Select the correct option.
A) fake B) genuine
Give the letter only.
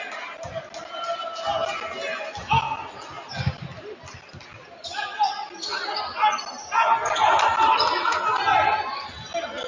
B